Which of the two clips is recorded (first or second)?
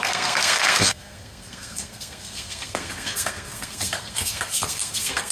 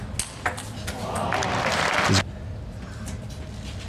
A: second